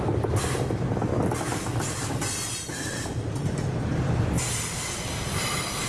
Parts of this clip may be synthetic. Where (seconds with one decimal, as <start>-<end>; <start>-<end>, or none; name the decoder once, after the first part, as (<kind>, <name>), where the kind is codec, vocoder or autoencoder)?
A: 0.0-1.1 (vocoder, BigVGAN v2); 2.2-5.9